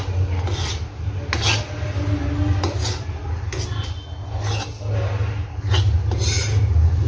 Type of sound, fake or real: real